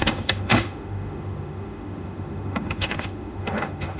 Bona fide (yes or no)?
no